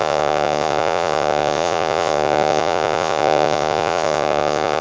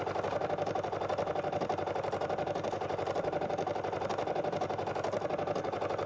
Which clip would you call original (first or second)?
second